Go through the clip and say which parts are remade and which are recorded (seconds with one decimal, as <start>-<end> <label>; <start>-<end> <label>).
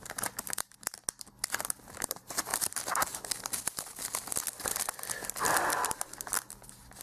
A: 0.0-1.0 remade; 1.0-1.9 recorded; 1.9-2.5 remade; 2.5-7.0 recorded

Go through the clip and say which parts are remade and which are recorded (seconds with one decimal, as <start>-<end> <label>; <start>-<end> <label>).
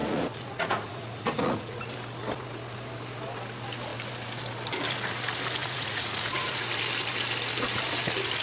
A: 0.0-1.8 remade; 1.8-5.6 recorded; 5.6-6.7 remade; 6.7-8.4 recorded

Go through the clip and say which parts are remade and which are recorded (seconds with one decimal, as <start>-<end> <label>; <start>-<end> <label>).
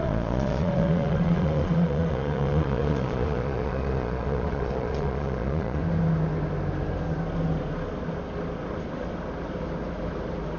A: 0.0-5.8 remade; 5.8-10.6 recorded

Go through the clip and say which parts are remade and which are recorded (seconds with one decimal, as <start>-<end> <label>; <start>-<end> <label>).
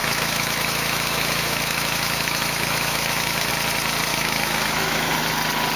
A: 0.0-3.5 remade; 3.5-4.1 recorded; 4.1-5.1 remade; 5.1-5.8 recorded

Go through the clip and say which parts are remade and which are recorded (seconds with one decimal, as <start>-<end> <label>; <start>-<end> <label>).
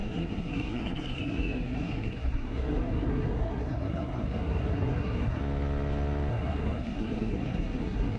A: 0.0-5.4 remade; 5.4-6.3 recorded; 6.3-8.2 remade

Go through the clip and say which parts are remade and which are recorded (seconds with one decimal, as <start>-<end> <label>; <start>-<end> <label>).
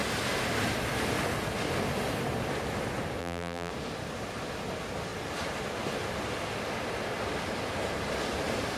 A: 0.0-3.2 recorded; 3.2-3.7 remade; 3.7-8.8 recorded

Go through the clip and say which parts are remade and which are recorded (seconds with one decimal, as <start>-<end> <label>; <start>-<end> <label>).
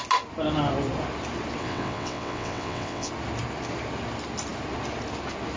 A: 0.0-1.6 recorded; 1.6-3.1 remade; 3.1-5.6 recorded